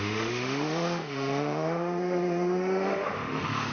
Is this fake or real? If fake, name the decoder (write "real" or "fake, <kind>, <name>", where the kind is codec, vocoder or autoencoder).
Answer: fake, autoencoder, DAC-VAE